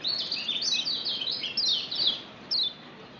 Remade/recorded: recorded